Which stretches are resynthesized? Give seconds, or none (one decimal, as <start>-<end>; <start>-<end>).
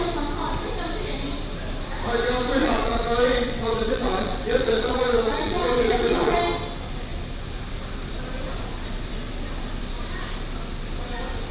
2.6-6.4